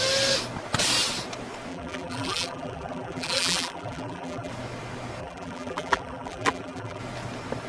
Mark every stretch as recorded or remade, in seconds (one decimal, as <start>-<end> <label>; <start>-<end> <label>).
0.0-1.7 recorded; 1.7-4.5 remade; 4.5-5.2 recorded; 5.2-7.0 remade; 7.0-7.7 recorded